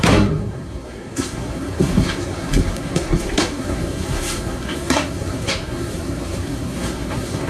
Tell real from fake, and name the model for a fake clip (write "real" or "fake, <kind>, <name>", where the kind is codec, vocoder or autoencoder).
fake, codec, SNAC